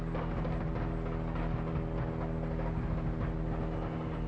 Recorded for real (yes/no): yes